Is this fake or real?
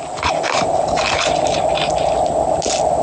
real